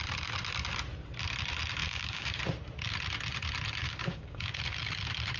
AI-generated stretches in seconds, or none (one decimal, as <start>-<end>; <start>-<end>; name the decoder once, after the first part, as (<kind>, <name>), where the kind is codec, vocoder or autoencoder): 1.8-2.4 (codec, DAC); 3.8-4.6